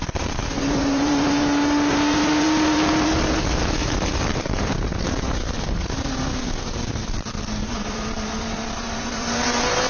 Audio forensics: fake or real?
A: fake